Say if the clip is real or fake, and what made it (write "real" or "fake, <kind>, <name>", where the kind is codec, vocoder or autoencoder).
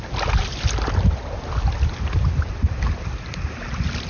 real